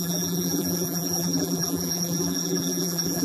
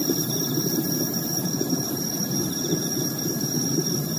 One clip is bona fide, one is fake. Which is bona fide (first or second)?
second